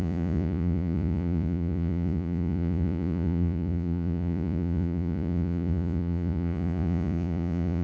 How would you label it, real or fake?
fake